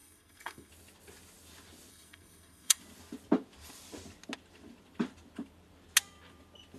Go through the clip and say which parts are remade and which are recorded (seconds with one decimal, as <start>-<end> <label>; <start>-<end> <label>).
0.0-0.7 remade; 0.7-1.9 recorded; 1.9-2.8 remade; 2.8-6.8 recorded